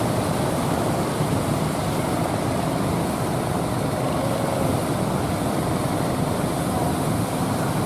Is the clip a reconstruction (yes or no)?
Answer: no